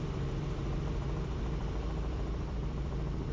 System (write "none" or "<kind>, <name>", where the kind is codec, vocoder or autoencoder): vocoder, BigVGAN v2